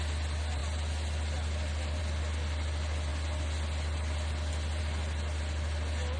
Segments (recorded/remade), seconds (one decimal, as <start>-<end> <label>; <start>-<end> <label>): 0.0-6.2 recorded